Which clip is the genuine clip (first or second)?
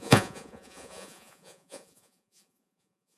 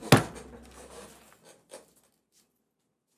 second